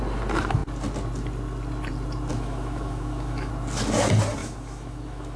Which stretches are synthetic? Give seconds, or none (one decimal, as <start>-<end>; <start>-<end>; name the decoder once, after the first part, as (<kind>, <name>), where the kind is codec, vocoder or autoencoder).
2.3-3.5 (autoencoder, DAC-VAE); 4.4-5.4